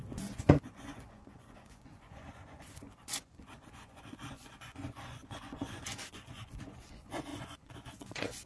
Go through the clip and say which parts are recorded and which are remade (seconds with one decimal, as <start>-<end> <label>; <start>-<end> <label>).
0.0-8.5 remade